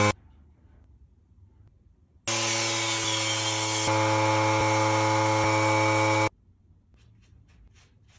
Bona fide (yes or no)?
yes